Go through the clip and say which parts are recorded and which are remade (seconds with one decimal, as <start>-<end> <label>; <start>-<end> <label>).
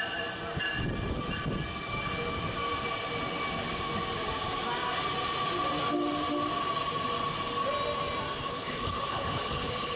0.0-8.5 recorded; 8.5-10.0 remade